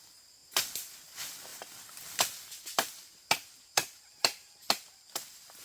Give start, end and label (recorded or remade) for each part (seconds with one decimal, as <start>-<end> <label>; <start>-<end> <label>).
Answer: 0.0-5.6 recorded